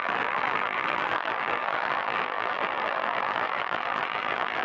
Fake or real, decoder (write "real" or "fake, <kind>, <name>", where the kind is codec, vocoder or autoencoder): fake, vocoder, BigVGAN v2